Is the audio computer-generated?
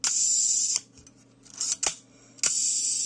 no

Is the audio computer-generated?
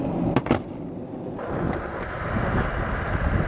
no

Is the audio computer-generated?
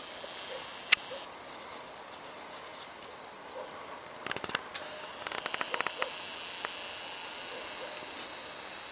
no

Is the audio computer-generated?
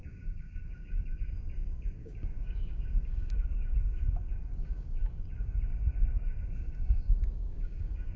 yes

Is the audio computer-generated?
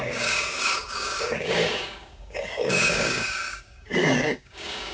yes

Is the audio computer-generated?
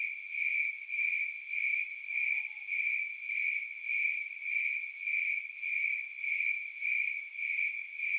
no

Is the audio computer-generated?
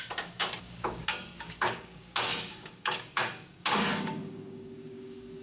yes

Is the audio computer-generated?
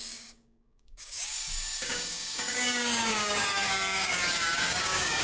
yes